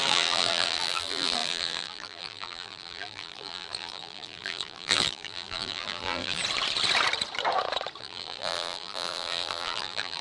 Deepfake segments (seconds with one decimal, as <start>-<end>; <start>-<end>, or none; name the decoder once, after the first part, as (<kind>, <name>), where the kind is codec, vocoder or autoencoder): 0.0-6.4 (vocoder, BigVGAN v2); 8.0-10.2